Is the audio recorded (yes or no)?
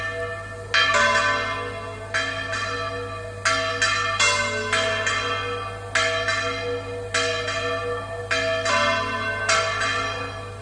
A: yes